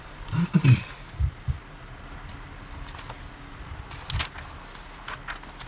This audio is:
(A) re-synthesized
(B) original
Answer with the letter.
B